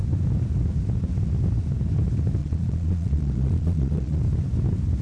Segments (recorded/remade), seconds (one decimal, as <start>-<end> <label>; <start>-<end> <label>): 0.0-2.4 recorded; 2.4-4.2 remade; 4.2-5.0 recorded

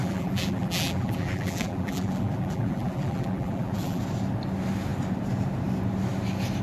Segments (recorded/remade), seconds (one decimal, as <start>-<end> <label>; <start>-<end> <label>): 0.0-4.0 remade; 4.0-6.6 recorded

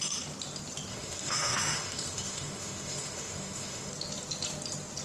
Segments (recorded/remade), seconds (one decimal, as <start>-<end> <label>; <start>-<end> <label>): 0.0-0.9 recorded; 0.9-3.9 remade; 3.9-5.0 recorded